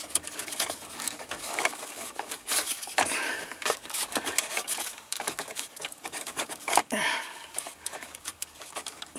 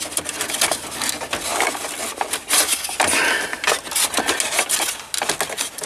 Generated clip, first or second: first